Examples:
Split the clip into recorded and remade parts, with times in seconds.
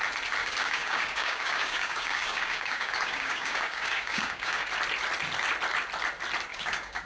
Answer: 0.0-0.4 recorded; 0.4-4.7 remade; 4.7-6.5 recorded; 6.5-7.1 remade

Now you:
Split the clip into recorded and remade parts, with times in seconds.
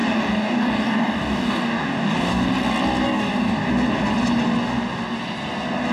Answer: 0.0-2.5 remade; 2.5-3.0 recorded; 3.0-3.7 remade; 3.7-5.9 recorded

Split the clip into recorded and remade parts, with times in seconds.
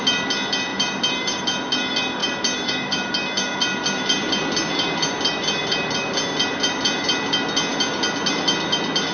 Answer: 0.0-9.1 recorded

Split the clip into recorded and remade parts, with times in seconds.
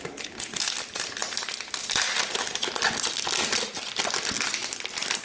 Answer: 0.0-5.2 recorded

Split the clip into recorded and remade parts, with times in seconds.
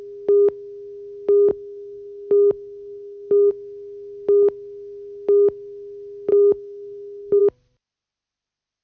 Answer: 0.0-1.5 recorded; 1.5-3.5 remade; 3.5-6.3 recorded; 6.3-7.4 remade; 7.4-8.8 recorded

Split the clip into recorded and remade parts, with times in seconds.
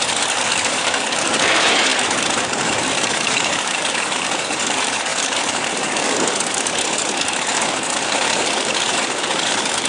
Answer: 0.0-9.9 remade